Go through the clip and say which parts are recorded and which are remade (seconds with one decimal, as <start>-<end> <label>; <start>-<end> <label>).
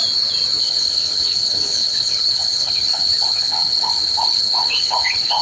0.0-0.6 recorded; 0.6-5.4 remade